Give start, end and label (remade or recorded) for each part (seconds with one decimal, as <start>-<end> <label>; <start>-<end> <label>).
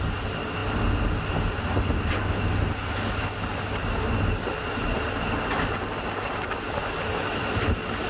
0.0-8.1 recorded